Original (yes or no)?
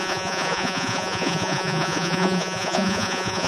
no